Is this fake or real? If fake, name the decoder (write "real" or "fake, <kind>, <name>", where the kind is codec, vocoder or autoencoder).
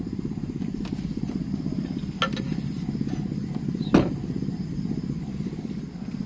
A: real